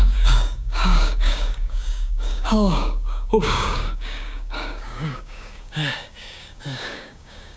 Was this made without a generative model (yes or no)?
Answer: no